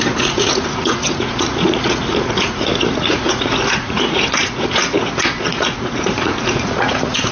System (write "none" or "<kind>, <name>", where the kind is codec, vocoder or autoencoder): vocoder, Vocos